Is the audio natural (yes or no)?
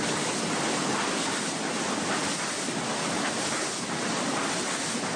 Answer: yes